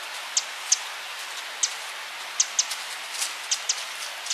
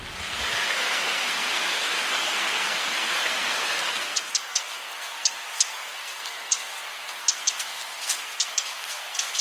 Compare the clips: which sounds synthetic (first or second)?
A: second